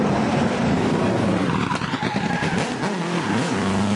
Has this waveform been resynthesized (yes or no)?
no